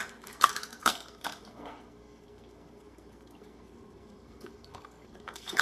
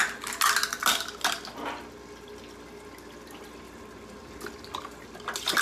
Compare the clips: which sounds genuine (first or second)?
second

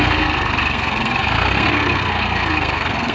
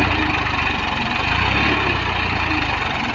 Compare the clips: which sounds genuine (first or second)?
second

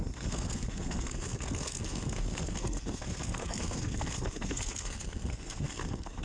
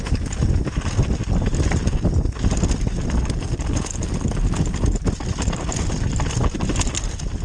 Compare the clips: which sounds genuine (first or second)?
second